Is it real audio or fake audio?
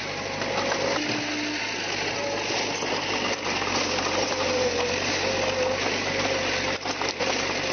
real